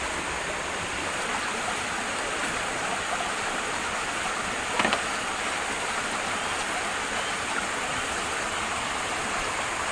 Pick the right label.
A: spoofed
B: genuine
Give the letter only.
B